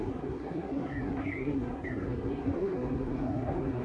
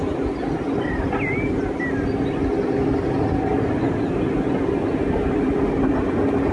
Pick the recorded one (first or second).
second